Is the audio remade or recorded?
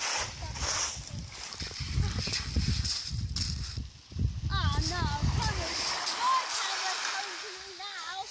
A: recorded